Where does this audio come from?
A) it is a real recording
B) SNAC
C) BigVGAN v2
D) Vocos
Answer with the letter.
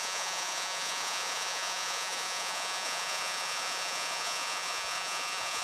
D